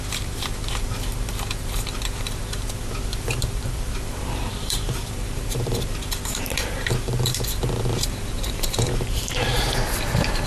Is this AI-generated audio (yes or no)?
yes